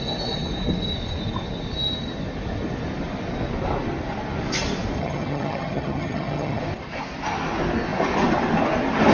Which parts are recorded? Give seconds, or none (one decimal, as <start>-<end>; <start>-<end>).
0.0-5.0; 6.6-9.1